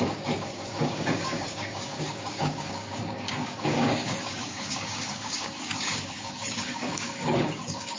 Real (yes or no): no